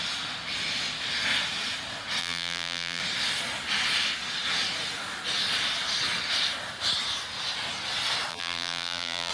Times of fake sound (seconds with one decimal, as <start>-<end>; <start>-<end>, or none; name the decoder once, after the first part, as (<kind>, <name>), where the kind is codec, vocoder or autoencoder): 2.2-3.0 (vocoder, BigVGAN v2); 8.3-9.3